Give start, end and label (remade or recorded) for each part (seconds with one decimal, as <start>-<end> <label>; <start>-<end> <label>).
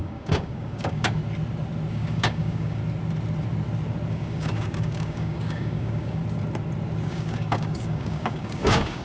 0.0-1.2 remade; 1.2-1.9 recorded; 1.9-2.8 remade; 2.8-4.1 recorded; 4.1-6.2 remade; 6.2-7.1 recorded; 7.1-9.0 remade